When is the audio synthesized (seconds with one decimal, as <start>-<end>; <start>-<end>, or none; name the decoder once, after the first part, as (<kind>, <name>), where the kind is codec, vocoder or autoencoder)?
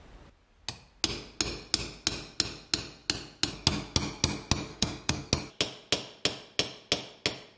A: 4.7-5.3 (codec, SNAC)